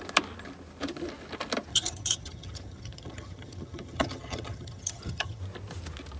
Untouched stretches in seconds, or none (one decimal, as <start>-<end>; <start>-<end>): 0.0-1.7; 5.4-6.2